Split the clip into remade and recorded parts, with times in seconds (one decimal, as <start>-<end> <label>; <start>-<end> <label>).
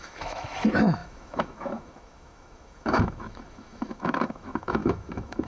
0.0-5.5 remade